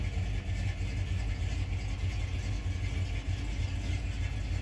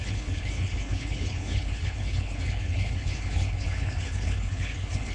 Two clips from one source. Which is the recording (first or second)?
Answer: first